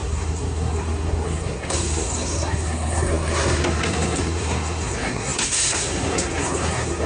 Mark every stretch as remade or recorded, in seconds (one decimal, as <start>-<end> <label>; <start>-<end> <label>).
0.0-7.1 remade